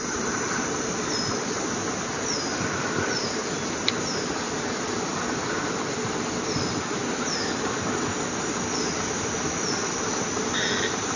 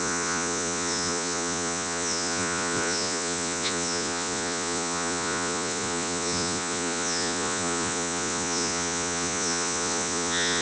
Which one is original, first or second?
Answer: first